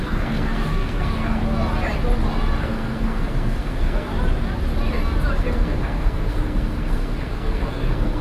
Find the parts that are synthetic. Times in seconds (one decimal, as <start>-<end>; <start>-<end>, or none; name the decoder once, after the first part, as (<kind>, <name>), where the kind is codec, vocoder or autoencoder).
0.0-1.4 (codec, SNAC); 2.6-4.1; 5.4-8.2